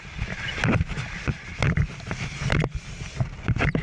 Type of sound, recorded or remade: recorded